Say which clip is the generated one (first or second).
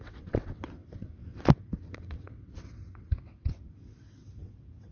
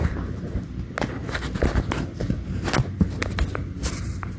first